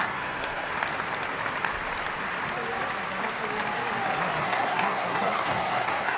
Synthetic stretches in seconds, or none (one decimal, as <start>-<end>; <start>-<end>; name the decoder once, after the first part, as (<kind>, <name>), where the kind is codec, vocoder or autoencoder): 0.0-0.7 (codec, SNAC); 4.4-6.2